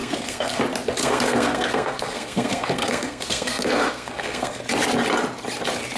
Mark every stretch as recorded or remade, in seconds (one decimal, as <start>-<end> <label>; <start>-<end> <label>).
0.0-0.6 remade; 0.6-1.0 recorded; 1.0-4.6 remade; 4.6-6.0 recorded